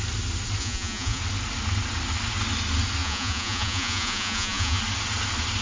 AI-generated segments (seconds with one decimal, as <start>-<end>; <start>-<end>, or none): 0.6-1.2; 3.0-4.8